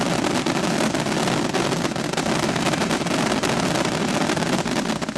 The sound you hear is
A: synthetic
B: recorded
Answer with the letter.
B